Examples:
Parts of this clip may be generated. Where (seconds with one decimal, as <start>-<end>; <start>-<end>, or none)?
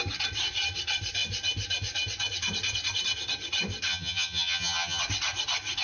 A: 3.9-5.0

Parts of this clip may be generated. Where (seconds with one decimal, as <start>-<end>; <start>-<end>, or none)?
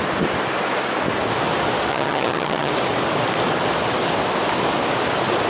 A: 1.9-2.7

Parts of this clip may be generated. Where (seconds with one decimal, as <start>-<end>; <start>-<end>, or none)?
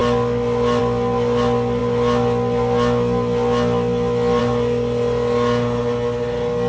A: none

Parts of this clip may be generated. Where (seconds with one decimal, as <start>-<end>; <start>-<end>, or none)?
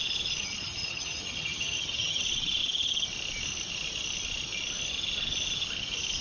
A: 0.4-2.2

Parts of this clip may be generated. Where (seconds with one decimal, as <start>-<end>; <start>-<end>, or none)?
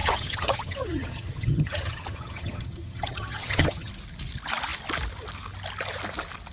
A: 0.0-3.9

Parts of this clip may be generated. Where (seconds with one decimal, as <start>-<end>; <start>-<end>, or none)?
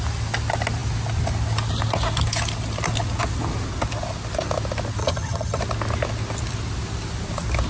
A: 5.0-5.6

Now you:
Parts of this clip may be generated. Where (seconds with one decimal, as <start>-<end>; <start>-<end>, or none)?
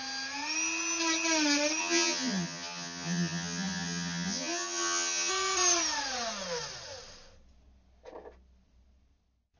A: 1.8-5.3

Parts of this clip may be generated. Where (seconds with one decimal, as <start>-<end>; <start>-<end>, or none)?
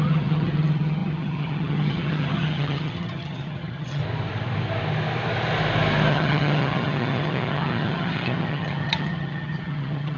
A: 0.0-4.0; 6.1-10.2